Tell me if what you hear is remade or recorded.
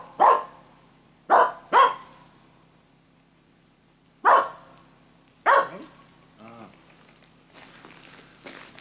recorded